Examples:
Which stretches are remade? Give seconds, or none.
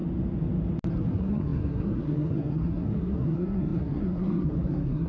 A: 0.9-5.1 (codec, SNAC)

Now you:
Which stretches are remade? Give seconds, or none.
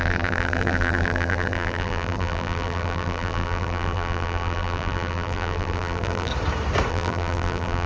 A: 0.0-6.3 (vocoder, BigVGAN v2); 6.9-7.9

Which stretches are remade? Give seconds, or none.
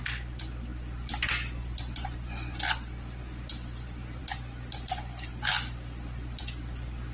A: none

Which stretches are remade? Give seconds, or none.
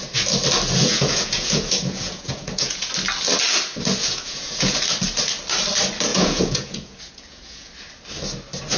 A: 0.8-2.9 (vocoder, Vocos); 4.0-4.8; 6.1-7.7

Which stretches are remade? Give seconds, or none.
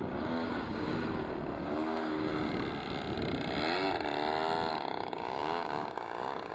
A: 0.0-0.9 (codec, DAC); 1.6-2.3; 4.7-6.5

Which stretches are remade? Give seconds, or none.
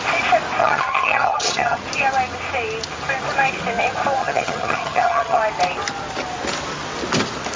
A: 0.6-1.8 (vocoder, HiFi-GAN); 4.2-5.4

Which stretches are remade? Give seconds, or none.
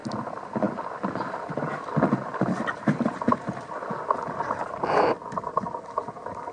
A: 0.0-3.9 (vocoder, BigVGAN v2)